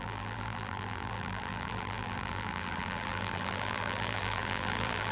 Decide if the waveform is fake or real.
fake